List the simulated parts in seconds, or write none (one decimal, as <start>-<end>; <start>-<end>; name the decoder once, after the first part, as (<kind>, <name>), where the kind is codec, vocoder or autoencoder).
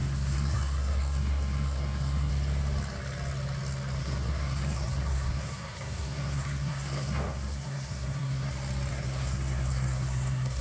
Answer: 0.0-2.3 (codec, SNAC); 4.0-8.5; 8.9-10.6